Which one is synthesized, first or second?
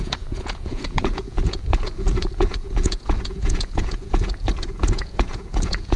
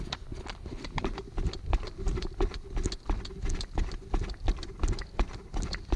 first